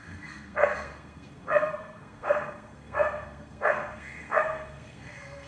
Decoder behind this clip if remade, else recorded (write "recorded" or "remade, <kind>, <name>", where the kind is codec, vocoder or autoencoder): remade, codec, SNAC